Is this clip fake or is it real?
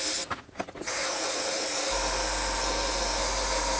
real